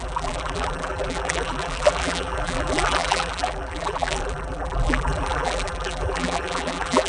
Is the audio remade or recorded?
remade